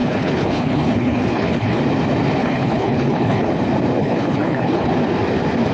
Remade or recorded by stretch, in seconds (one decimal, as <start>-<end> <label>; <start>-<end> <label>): 0.0-1.8 remade; 1.8-2.4 recorded; 2.4-3.5 remade; 3.5-4.0 recorded; 4.0-4.9 remade; 4.9-5.7 recorded